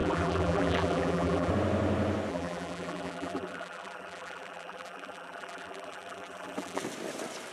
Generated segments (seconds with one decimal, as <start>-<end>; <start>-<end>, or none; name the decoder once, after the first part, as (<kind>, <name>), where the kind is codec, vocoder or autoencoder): 0.0-1.5 (vocoder, BigVGAN v2); 2.3-6.8